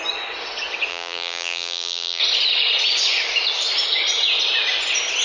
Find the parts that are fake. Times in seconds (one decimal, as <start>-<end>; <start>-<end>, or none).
0.9-2.2